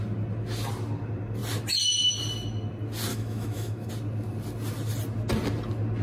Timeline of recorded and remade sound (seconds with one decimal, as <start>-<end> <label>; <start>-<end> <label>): 0.0-3.1 recorded; 3.1-3.9 remade; 3.9-6.0 recorded